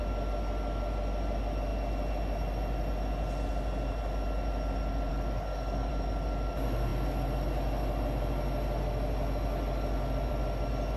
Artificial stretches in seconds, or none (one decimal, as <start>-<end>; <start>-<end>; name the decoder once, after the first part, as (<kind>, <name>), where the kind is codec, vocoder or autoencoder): 5.1-5.9 (codec, DAC)